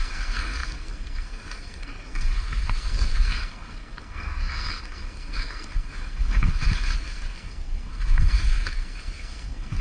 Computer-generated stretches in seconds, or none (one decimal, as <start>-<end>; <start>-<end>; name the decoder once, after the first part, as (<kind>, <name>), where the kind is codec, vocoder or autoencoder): 0.0-9.8 (codec, SNAC)